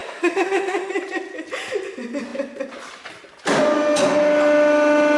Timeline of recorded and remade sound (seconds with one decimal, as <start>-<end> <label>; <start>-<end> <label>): 0.0-0.9 remade; 0.9-5.2 recorded